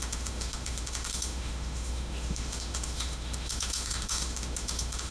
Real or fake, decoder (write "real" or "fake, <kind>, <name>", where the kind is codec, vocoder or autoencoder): fake, autoencoder, DAC-VAE